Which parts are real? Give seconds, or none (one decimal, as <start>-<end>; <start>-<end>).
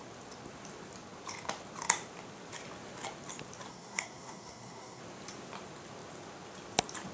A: 0.0-3.7; 5.0-7.1